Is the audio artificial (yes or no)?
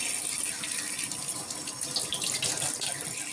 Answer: no